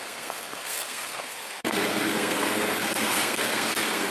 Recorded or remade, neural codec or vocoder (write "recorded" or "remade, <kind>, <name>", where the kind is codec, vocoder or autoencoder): remade, codec, SNAC